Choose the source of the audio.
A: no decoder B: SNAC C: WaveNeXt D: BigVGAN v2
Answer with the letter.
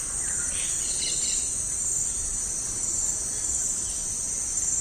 A